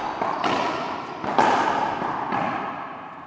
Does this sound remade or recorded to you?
recorded